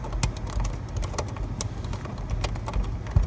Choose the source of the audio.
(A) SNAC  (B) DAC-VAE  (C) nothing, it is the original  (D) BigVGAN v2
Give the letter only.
C